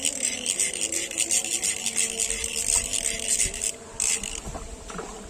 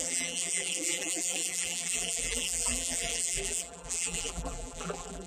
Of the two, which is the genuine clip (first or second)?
first